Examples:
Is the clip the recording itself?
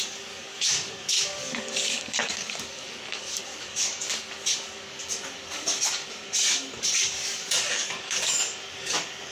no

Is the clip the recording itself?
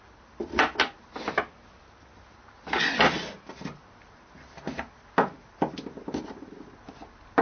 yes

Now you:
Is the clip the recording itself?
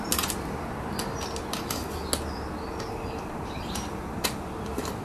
yes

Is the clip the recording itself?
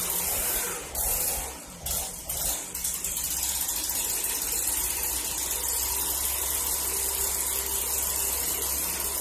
yes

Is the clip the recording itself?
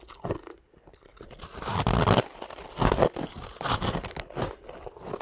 yes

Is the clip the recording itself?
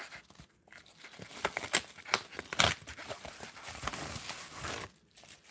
yes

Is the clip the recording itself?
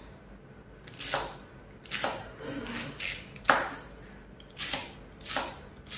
yes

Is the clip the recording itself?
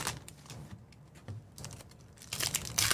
yes